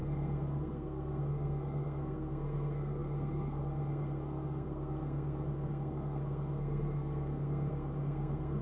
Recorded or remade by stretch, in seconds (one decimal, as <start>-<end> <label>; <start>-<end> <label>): 0.0-8.6 remade